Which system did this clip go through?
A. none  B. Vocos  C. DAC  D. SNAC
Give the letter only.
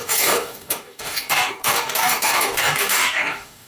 C